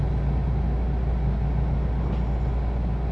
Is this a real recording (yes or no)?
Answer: yes